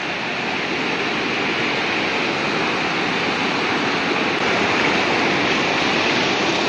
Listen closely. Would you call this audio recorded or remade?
recorded